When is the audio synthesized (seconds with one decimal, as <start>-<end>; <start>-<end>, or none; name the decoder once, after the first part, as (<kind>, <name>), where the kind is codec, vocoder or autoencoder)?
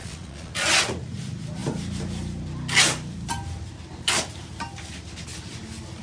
0.0-0.5 (vocoder, Vocos)